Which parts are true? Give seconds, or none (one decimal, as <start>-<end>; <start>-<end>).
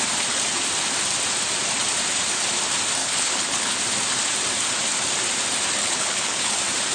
0.0-3.0; 3.8-5.8; 6.5-6.9